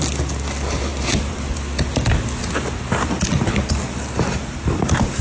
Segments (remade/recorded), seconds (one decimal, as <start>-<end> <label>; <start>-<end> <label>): 0.0-0.9 recorded; 0.9-1.6 remade; 1.6-5.2 recorded